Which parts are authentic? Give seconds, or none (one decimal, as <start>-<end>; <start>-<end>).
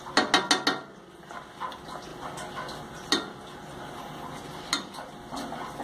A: 0.0-5.8